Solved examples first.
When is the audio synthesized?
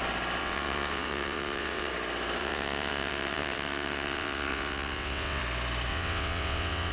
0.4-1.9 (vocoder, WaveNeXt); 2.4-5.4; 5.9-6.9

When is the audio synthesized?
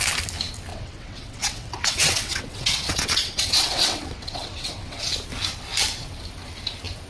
0.7-5.0 (vocoder, WaveNeXt)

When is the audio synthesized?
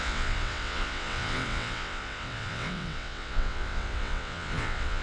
0.0-5.0 (vocoder, WaveNeXt)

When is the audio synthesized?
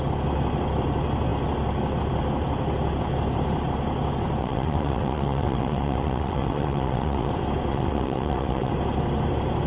4.4-7.3 (vocoder, WaveNeXt); 7.7-8.7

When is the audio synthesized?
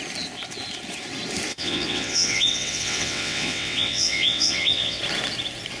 1.5-5.0 (vocoder, WaveNeXt)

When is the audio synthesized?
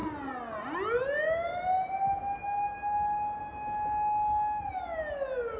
none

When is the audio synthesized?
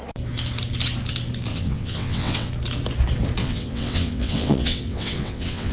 1.5-2.5 (vocoder, WaveNeXt); 3.4-5.7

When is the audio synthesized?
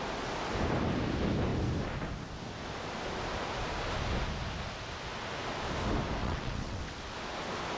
6.2-6.8 (vocoder, WaveNeXt)